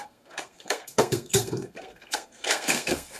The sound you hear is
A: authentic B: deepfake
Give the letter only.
B